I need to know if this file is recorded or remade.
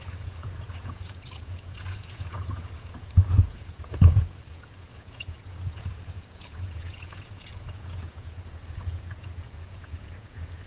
remade